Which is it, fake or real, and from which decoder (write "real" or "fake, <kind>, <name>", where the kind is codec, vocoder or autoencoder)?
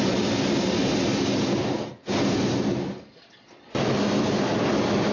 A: real